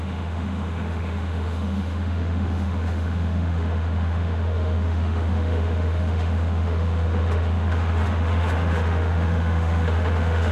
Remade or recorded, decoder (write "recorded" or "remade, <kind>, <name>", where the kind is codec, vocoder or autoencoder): remade, autoencoder, DAC-VAE